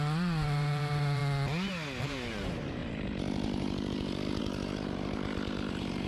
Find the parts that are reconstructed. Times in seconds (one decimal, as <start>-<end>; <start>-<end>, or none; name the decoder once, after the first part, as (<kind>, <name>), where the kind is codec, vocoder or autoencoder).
0.0-1.2 (vocoder, BigVGAN v2); 2.0-6.1